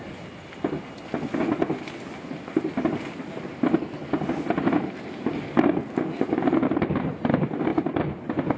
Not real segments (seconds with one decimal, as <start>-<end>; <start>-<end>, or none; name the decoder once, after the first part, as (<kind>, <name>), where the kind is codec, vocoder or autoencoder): none